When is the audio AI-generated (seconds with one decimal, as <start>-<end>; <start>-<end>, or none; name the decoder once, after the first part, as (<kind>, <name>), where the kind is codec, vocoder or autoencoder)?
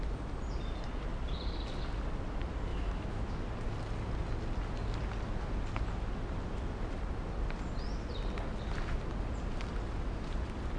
2.7-3.4 (autoencoder, DAC-VAE)